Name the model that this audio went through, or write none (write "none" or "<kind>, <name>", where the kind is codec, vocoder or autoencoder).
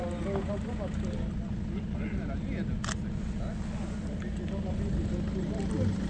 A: none